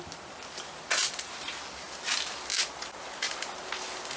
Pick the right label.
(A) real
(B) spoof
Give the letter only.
A